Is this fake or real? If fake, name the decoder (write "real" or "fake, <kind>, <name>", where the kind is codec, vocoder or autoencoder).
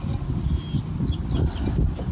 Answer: real